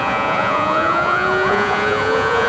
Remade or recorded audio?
remade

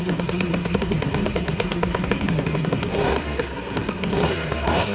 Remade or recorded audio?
remade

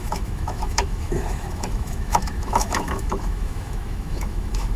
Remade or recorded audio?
remade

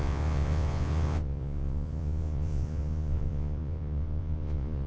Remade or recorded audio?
remade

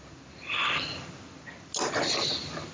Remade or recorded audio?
recorded